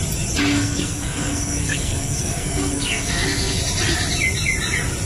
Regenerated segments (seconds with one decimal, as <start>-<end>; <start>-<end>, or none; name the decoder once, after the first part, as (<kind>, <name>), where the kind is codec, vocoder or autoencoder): 0.5-3.6 (codec, SNAC)